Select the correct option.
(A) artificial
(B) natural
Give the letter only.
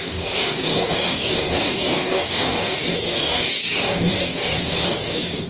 A